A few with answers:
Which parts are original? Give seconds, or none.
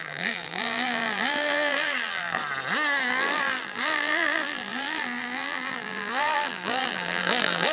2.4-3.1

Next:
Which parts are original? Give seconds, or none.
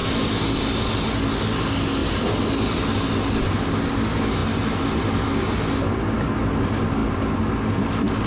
0.9-8.3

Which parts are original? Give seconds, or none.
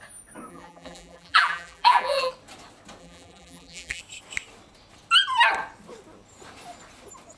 0.0-0.5; 2.3-3.0; 4.0-7.4